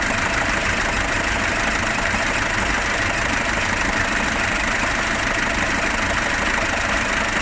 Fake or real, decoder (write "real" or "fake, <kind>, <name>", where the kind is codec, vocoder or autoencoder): real